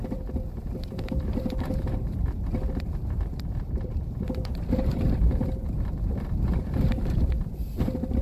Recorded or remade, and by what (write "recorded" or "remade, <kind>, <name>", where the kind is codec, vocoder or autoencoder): remade, vocoder, BigVGAN v2